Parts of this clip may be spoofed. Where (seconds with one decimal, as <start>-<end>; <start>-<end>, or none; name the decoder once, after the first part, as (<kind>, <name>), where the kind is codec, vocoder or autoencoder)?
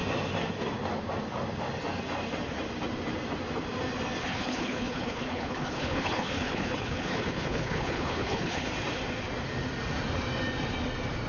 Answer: 4.2-8.7 (codec, HILCodec)